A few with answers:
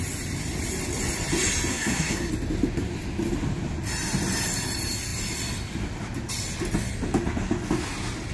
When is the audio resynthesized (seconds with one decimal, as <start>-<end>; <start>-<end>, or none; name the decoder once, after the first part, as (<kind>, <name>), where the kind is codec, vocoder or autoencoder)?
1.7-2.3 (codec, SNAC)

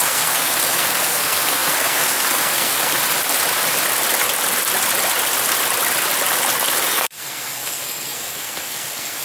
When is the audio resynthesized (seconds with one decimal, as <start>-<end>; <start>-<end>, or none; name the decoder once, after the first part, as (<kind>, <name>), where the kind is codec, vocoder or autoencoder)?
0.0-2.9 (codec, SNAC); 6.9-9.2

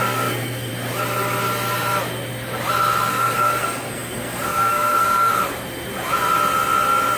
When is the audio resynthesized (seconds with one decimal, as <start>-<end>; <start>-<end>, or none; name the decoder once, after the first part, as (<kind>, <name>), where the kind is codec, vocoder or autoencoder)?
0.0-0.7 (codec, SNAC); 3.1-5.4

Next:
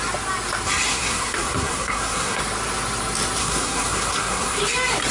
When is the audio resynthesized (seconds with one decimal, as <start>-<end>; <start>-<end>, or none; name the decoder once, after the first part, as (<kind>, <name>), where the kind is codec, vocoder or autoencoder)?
0.9-2.4 (codec, SNAC); 3.4-4.6